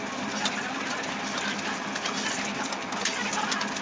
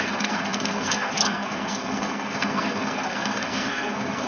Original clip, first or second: first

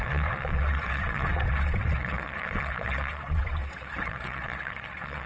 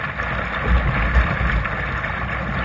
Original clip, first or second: second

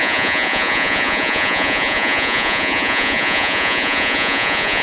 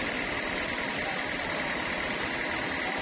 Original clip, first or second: second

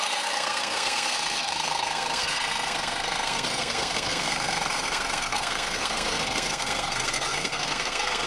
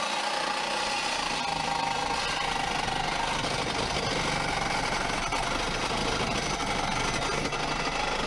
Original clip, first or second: second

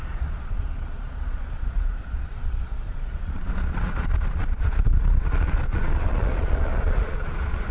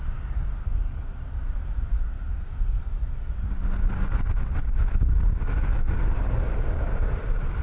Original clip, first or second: second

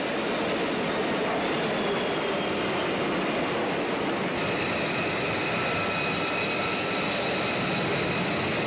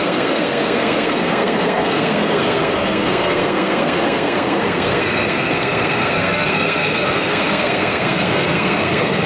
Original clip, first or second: first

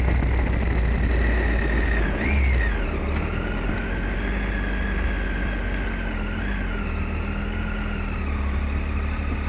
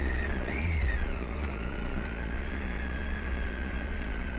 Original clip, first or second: first